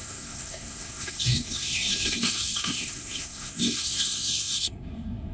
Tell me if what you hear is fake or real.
fake